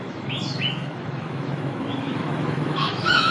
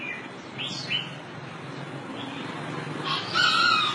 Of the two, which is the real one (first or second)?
second